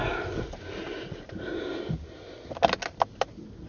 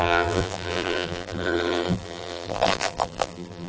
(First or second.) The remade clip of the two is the second